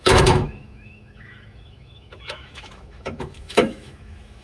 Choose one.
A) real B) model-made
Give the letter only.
B